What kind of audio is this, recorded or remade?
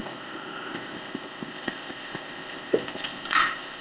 remade